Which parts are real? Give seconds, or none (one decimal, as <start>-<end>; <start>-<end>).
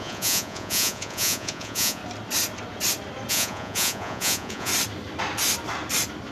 2.0-3.3; 4.7-6.3